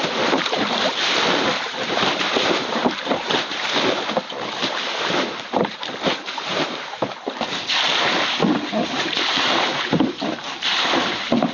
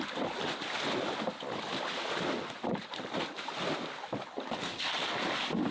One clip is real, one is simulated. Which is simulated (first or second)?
first